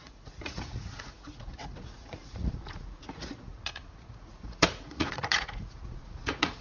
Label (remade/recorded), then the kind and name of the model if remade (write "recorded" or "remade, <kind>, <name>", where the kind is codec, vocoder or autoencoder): remade, vocoder, Vocos